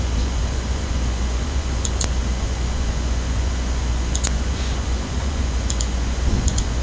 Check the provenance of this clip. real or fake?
fake